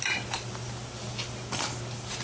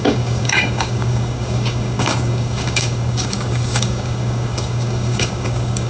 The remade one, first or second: second